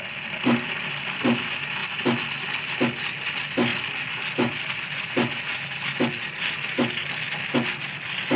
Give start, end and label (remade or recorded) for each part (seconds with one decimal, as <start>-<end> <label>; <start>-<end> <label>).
0.0-8.4 recorded